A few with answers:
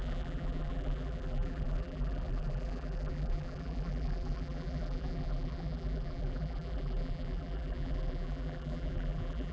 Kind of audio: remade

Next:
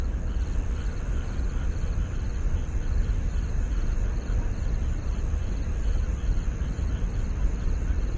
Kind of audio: recorded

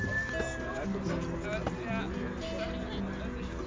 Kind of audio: recorded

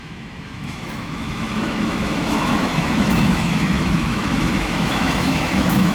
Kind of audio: remade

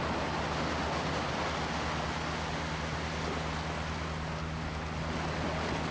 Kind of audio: recorded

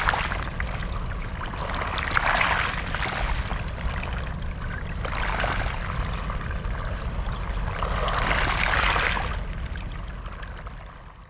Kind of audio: recorded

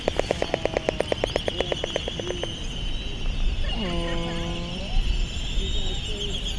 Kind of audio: recorded